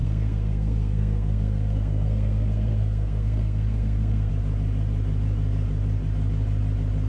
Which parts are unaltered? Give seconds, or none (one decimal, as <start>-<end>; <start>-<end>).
4.3-7.1